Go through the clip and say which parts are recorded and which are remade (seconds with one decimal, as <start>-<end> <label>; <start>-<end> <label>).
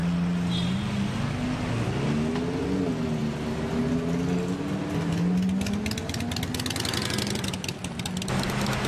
0.0-8.9 recorded